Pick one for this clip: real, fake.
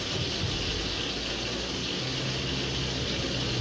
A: real